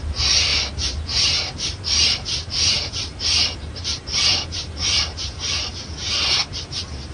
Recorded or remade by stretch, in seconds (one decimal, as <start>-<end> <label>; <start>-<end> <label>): 0.0-3.1 recorded; 3.1-5.5 remade; 5.5-7.1 recorded